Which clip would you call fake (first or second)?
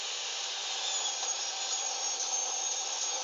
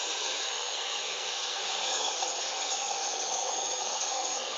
second